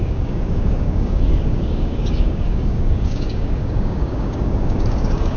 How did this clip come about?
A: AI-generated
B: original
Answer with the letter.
A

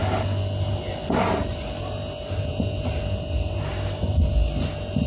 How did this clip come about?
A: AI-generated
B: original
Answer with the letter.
B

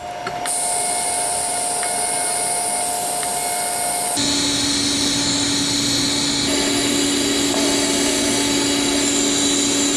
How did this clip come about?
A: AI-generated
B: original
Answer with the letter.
B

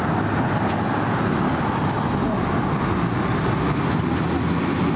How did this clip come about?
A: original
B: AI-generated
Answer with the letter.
A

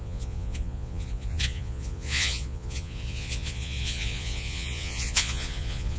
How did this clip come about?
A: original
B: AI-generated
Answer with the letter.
B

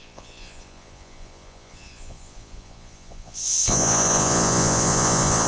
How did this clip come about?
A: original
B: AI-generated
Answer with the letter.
B